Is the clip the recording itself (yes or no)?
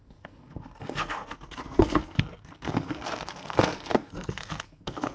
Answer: no